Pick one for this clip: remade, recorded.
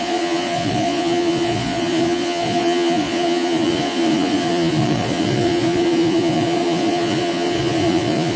remade